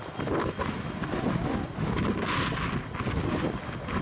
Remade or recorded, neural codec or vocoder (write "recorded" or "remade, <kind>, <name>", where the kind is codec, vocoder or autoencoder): recorded